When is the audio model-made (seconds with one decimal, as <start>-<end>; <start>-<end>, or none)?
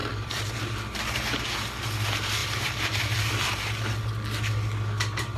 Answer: 0.0-0.5; 2.4-3.6